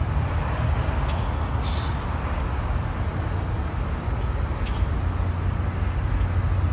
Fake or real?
real